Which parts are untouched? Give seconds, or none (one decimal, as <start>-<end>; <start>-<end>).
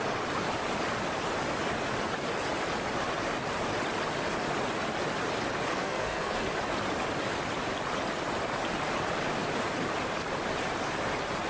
0.0-5.7; 6.5-11.5